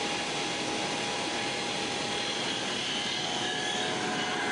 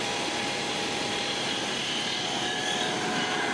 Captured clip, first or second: first